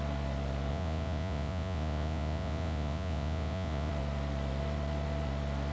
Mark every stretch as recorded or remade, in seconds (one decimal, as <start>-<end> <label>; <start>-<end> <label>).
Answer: 0.0-0.7 recorded; 0.7-3.9 remade; 3.9-5.7 recorded